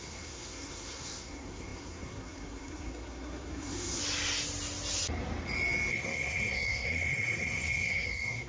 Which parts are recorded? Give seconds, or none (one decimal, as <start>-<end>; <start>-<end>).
4.0-5.9